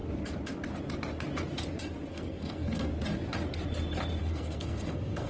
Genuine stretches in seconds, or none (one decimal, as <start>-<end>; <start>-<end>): 0.0-2.1; 2.9-4.2